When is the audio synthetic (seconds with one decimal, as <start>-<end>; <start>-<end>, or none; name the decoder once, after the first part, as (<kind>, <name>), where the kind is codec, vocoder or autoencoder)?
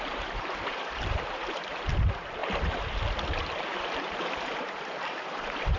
0.0-2.4 (vocoder, BigVGAN v2); 3.6-5.8